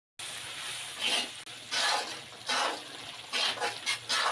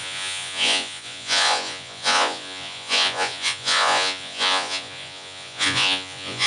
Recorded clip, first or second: first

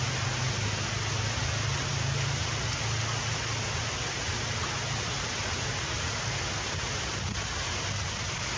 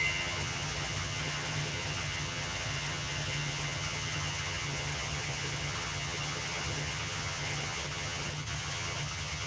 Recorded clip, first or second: first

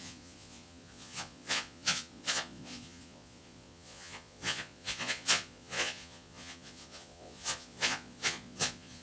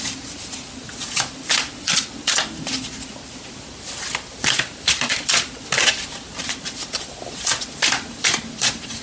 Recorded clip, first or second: second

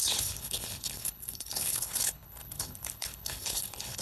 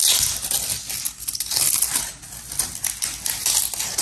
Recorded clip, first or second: second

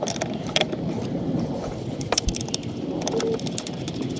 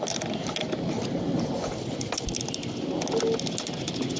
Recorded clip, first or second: second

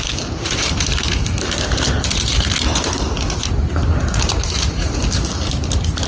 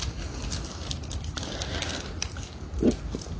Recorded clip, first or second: second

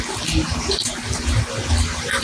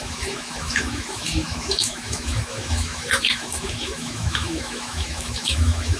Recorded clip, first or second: first